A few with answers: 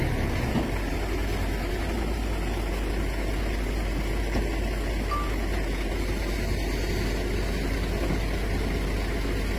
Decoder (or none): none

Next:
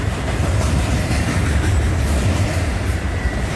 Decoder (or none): vocoder, BigVGAN v2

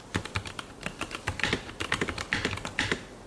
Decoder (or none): vocoder, BigVGAN v2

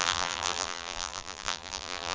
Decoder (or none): vocoder, BigVGAN v2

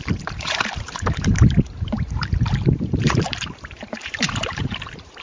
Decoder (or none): vocoder, BigVGAN v2